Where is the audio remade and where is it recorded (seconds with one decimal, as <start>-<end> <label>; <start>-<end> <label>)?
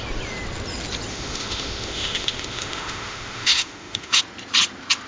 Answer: 0.0-1.1 recorded; 1.1-4.2 remade; 4.2-5.1 recorded